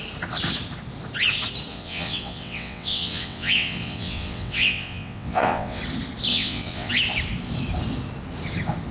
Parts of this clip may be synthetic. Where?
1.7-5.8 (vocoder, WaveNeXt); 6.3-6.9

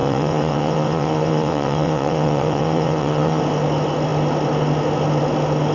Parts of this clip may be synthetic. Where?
0.0-3.4 (vocoder, WaveNeXt)